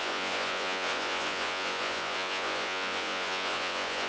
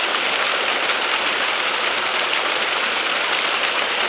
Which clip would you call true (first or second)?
second